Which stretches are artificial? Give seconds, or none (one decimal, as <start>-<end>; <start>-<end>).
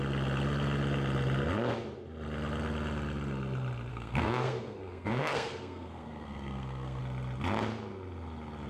3.9-7.0